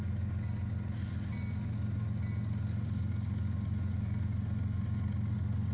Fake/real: real